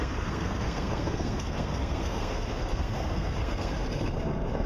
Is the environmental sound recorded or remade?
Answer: remade